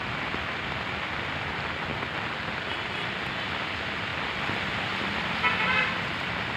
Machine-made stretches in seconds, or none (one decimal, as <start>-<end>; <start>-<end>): none

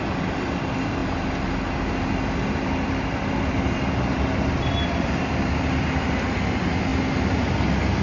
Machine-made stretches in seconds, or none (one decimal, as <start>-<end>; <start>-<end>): 0.0-1.0; 2.8-6.9

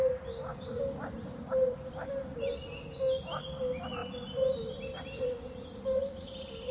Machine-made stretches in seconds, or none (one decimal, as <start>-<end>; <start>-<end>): 0.5-2.5; 4.0-5.3

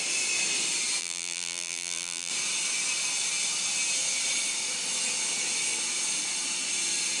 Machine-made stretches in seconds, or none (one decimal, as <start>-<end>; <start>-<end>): 1.0-2.3